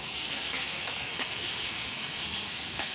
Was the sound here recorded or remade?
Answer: remade